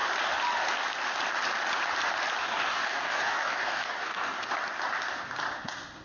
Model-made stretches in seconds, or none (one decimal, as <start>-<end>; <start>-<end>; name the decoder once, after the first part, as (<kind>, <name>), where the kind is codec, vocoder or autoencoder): 2.4-4.4 (codec, DAC)